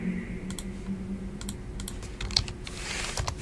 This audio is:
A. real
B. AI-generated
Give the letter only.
A